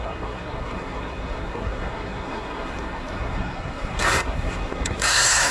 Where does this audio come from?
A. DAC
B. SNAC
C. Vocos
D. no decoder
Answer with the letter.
B